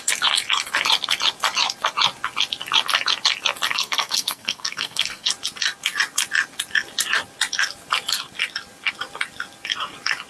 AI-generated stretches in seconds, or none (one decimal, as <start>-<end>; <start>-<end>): 3.7-5.3

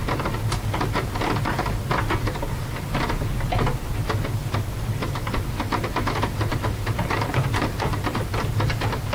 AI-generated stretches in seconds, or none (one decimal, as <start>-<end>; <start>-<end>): 6.5-7.9

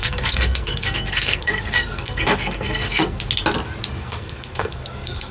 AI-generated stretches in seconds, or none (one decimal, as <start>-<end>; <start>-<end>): 0.0-3.2; 4.0-5.3